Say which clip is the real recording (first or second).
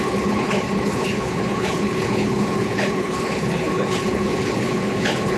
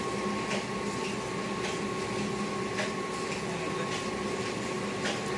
second